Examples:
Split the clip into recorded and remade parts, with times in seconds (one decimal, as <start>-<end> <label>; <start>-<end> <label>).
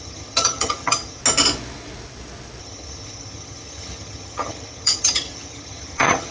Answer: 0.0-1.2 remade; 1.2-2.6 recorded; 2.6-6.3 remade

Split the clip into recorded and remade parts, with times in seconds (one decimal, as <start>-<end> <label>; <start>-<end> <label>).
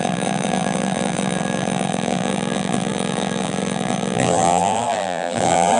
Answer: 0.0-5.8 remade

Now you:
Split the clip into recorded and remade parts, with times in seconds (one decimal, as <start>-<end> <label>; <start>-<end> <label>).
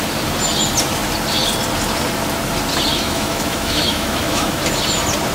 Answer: 0.0-2.9 recorded; 2.9-4.6 remade; 4.6-5.3 recorded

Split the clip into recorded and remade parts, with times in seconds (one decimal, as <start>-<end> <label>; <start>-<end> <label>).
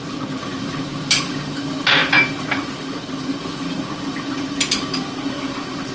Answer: 0.0-5.9 recorded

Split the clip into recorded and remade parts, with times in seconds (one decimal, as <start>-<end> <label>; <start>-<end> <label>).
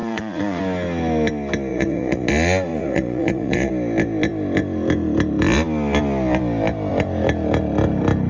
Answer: 0.0-0.6 remade; 0.6-1.7 recorded; 1.7-2.3 remade; 2.3-2.7 recorded; 2.7-3.7 remade; 3.7-8.3 recorded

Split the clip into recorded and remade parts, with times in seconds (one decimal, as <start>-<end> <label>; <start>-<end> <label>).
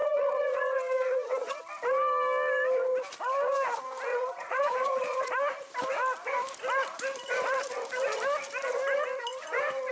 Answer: 0.0-1.6 remade; 1.6-4.1 recorded; 4.1-5.3 remade; 5.3-9.9 recorded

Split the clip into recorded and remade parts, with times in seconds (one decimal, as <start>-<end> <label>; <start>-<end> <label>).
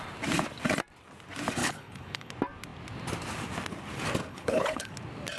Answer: 0.0-1.6 recorded; 1.6-2.3 remade; 2.3-4.3 recorded; 4.3-4.9 remade; 4.9-5.4 recorded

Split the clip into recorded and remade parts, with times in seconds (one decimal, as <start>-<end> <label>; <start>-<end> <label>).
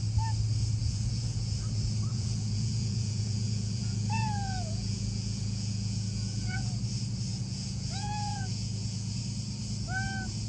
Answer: 0.0-0.8 recorded; 0.8-1.4 remade; 1.4-2.1 recorded; 2.1-6.7 remade; 6.7-7.3 recorded; 7.3-9.2 remade; 9.2-10.5 recorded